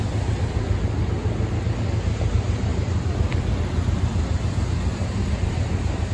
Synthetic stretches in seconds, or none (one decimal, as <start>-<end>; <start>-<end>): 4.9-6.1